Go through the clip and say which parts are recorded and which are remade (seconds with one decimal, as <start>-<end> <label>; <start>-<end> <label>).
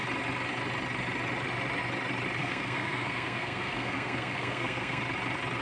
0.0-2.4 recorded; 2.4-5.0 remade; 5.0-5.6 recorded